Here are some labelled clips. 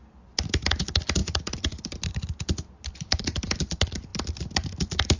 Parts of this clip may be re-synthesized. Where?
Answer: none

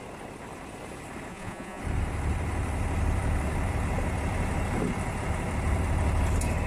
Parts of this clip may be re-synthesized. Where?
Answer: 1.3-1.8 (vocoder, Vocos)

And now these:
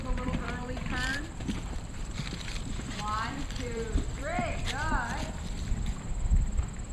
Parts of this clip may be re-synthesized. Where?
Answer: 1.1-5.2 (vocoder, BigVGAN v2)

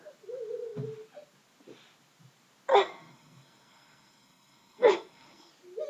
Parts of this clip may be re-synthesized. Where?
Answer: 2.7-5.5 (codec, SNAC)

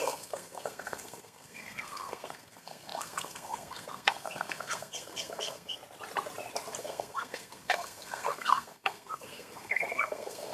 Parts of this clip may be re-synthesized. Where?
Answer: 0.0-5.8 (codec, SNAC); 6.8-10.5

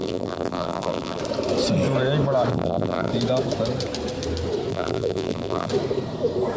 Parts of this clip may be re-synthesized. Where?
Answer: 0.0-1.2 (vocoder, BigVGAN v2); 2.5-3.1; 4.7-5.7

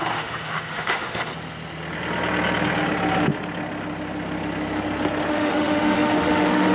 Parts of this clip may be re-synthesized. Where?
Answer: 0.0-1.3 (autoencoder, DAC-VAE); 5.3-6.7

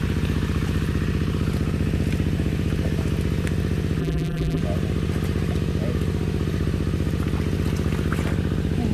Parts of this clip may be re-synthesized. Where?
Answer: 4.0-4.6 (vocoder, BigVGAN v2)